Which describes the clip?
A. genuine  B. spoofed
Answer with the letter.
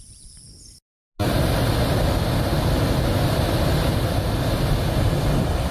A